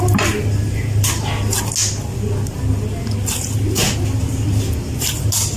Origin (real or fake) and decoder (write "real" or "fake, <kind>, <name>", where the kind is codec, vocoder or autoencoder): real